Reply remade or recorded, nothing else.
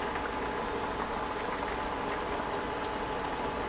recorded